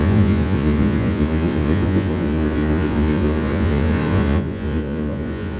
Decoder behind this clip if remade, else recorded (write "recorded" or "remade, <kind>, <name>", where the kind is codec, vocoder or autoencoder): remade, vocoder, Vocos